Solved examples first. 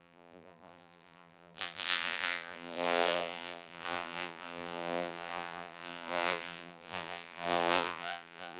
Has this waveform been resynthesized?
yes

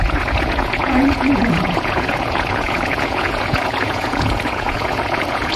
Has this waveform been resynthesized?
yes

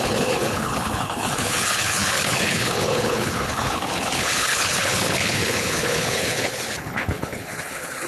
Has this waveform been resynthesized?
yes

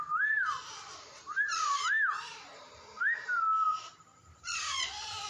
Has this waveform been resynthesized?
yes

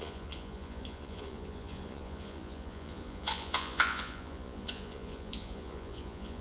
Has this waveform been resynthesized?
yes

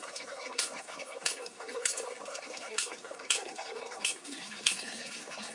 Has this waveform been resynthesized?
yes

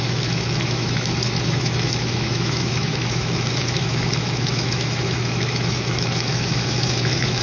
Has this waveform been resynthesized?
yes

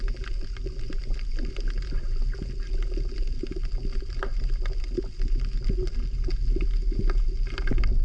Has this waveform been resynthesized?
no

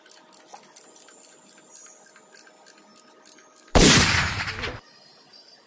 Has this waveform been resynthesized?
no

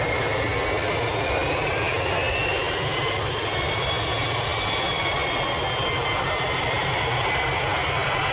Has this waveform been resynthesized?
no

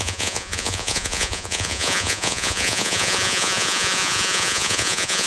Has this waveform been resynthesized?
yes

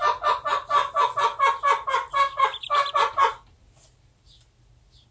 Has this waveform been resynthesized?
no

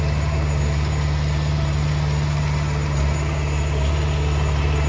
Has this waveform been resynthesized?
no